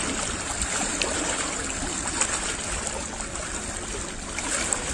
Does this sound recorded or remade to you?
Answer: recorded